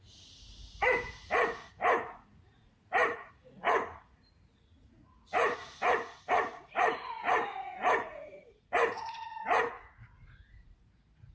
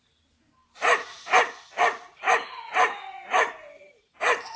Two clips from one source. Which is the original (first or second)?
second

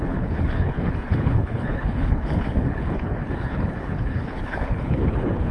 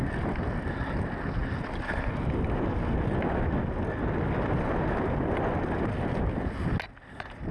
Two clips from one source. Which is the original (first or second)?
second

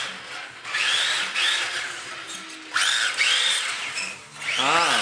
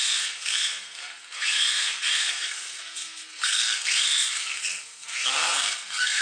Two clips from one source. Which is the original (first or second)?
first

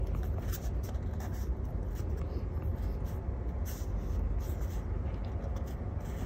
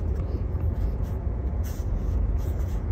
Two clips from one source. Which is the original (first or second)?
first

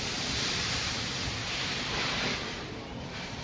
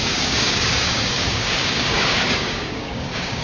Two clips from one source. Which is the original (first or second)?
first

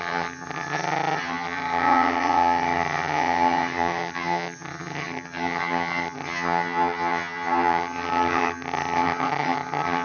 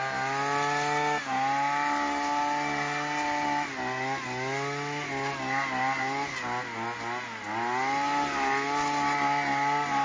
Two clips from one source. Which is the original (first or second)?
second